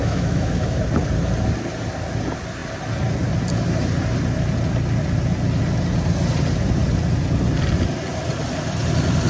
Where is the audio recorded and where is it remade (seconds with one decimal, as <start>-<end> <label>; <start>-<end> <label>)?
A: 0.0-0.8 remade; 0.8-9.3 recorded